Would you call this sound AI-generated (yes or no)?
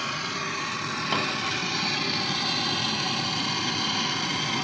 no